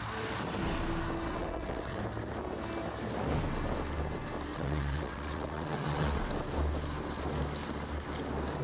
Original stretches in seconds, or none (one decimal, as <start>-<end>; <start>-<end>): 0.0-1.3; 2.0-4.5; 6.3-8.6